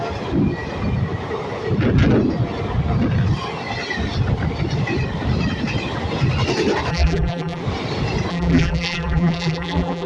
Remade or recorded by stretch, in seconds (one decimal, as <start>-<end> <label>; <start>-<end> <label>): 0.0-6.9 recorded; 6.9-7.6 remade; 7.6-8.3 recorded; 8.3-10.1 remade